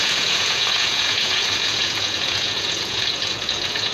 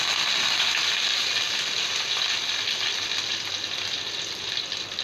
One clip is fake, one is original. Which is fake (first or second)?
first